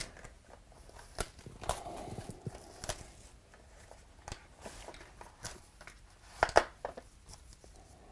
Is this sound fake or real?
real